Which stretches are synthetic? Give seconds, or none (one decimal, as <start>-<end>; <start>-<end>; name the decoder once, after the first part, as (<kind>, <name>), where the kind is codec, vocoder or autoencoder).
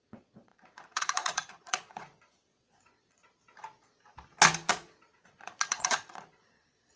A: 0.0-3.4 (vocoder, Vocos); 4.7-7.0